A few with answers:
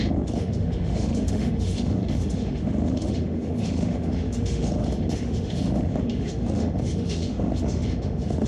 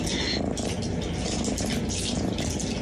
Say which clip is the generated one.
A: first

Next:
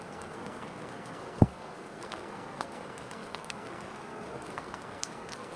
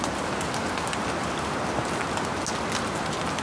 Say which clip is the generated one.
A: first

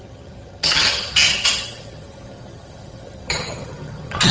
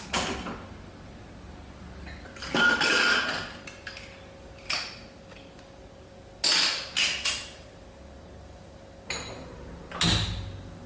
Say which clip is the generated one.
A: first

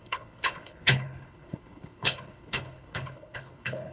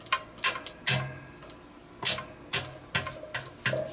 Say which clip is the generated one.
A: first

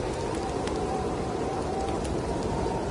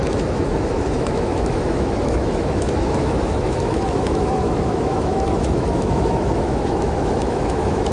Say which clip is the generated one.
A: second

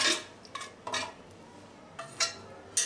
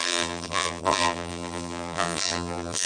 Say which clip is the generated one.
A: second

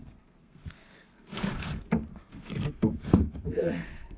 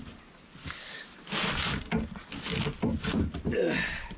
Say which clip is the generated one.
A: first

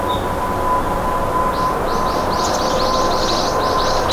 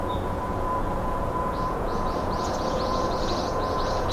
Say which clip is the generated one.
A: second